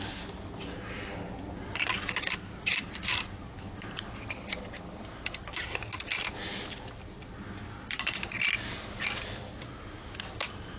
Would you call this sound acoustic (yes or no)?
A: yes